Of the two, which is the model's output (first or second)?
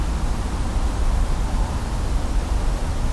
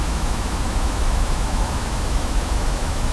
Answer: second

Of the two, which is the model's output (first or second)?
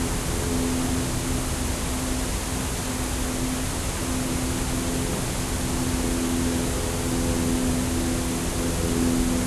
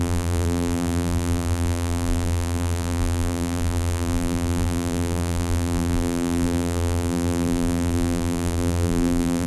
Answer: second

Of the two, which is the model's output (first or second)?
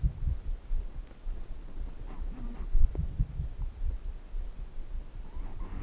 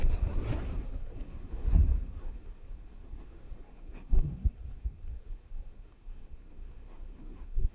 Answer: second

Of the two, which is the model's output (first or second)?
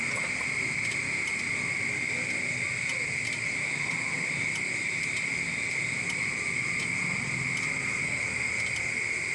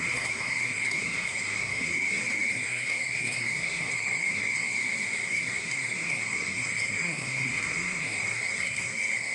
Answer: second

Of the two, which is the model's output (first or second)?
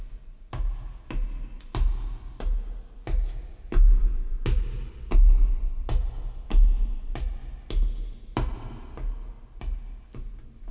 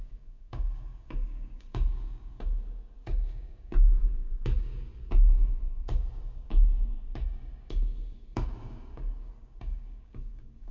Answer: second